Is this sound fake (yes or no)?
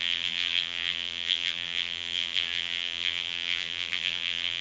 yes